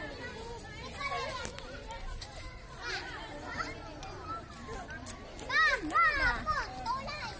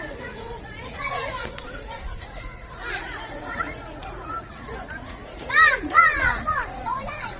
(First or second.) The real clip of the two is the first